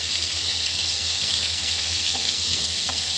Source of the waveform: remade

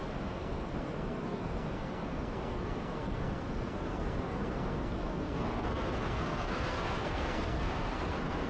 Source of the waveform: remade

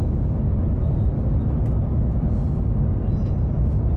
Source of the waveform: recorded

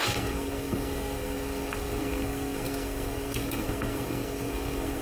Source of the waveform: remade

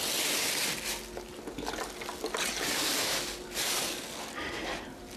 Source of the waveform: recorded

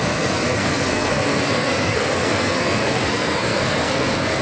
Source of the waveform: remade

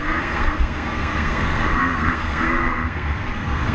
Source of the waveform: remade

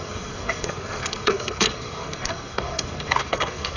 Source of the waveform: remade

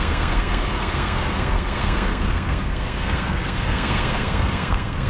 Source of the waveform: remade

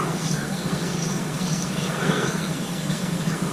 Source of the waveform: remade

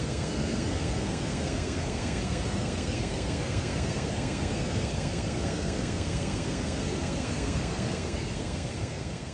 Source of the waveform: remade